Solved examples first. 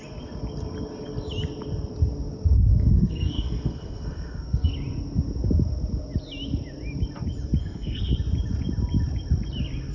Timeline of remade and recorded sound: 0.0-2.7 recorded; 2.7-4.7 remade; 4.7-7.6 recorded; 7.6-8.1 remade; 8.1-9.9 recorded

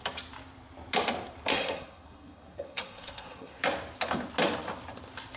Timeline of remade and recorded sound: 0.0-1.5 recorded; 1.5-3.6 remade; 3.6-5.4 recorded

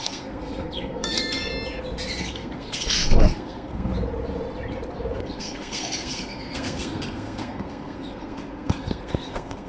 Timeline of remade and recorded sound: 0.0-1.5 remade; 1.5-2.2 recorded; 2.2-3.9 remade; 3.9-5.2 recorded; 5.2-9.7 remade